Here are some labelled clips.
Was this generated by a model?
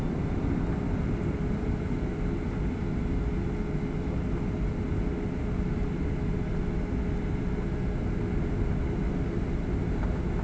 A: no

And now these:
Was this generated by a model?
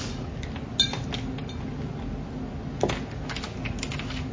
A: no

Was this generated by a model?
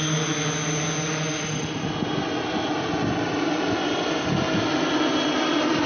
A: no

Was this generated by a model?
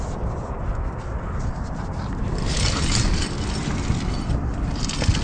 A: no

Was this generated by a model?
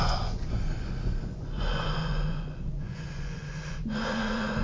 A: yes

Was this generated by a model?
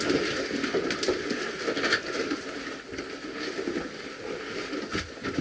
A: no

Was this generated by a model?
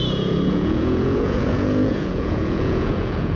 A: yes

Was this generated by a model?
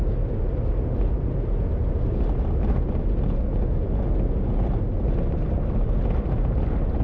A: no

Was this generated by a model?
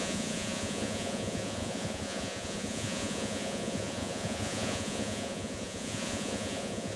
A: yes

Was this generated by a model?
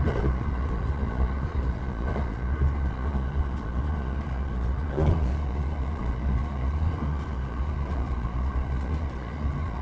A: yes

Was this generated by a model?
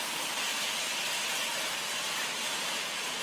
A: no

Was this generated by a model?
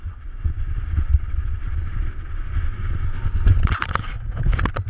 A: no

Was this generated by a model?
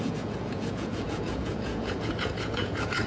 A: yes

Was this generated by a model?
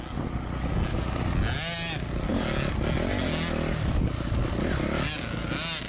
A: no